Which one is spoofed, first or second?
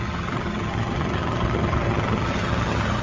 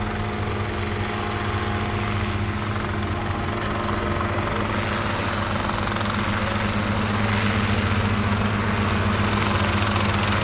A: first